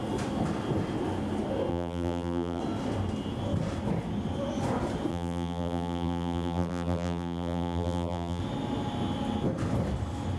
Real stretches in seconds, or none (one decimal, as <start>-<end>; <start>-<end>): 0.0-1.7; 2.6-5.1; 8.4-10.4